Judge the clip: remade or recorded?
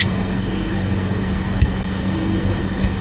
remade